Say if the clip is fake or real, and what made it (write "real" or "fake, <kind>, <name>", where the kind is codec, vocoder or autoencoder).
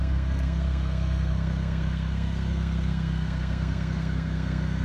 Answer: fake, codec, SNAC